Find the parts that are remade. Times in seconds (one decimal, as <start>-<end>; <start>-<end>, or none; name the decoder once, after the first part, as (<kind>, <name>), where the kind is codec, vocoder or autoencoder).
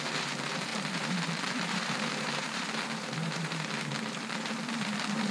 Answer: 0.7-3.9 (vocoder, BigVGAN v2)